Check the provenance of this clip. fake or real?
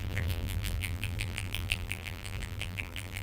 fake